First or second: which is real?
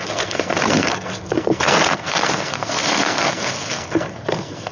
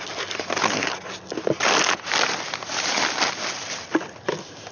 second